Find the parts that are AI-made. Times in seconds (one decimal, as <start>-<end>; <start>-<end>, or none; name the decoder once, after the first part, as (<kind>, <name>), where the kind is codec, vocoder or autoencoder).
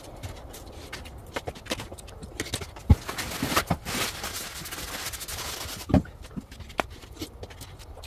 none